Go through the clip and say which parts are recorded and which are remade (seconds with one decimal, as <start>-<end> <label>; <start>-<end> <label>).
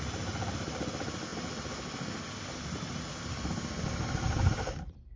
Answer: 0.0-5.2 recorded